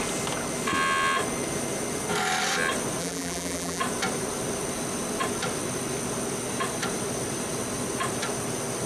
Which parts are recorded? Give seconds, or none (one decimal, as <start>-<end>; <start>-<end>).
0.0-3.0; 3.8-8.9